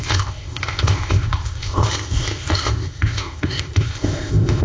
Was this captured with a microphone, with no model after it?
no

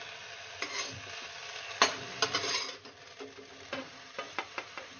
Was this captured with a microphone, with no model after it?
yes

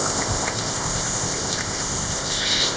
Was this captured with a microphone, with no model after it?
no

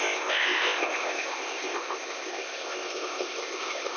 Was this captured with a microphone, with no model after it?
no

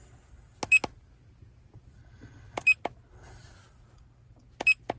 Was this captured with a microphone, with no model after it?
yes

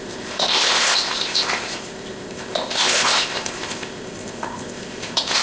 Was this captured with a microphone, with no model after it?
no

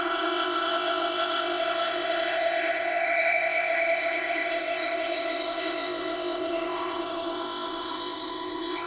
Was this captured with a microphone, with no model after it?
no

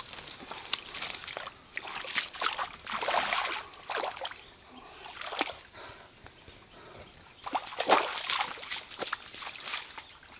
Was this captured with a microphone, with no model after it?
yes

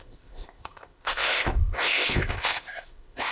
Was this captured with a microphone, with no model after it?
no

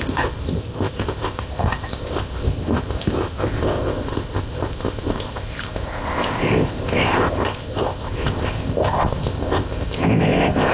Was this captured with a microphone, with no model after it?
no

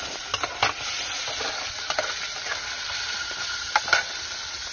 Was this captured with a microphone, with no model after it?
yes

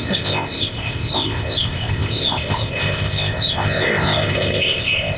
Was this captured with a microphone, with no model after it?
no